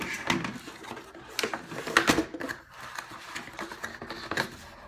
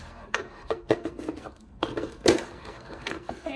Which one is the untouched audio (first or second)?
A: first